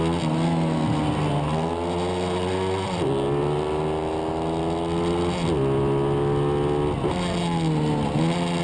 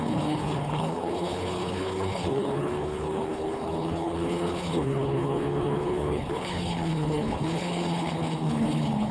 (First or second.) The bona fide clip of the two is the first